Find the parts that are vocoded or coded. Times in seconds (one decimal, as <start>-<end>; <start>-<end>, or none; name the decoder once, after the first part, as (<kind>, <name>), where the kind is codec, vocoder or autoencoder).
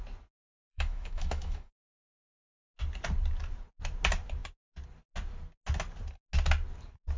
0.5-2.6 (autoencoder, DAC-VAE)